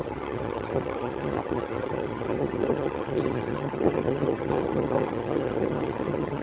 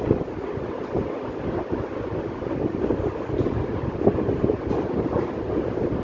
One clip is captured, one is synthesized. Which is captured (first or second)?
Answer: second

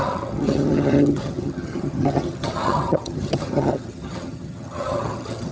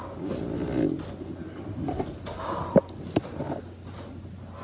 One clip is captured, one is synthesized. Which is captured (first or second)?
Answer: second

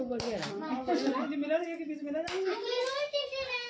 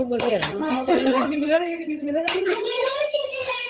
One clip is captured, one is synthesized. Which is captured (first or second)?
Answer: first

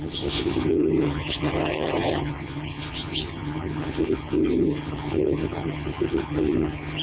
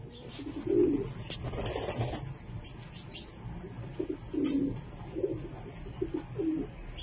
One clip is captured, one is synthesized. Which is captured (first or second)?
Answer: second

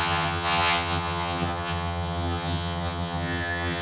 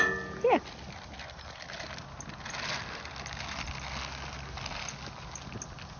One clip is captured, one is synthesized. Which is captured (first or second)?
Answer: second